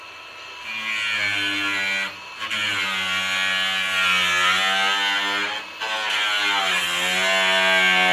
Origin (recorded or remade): recorded